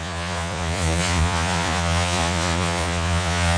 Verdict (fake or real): fake